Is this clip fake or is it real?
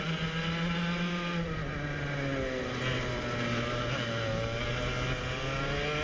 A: real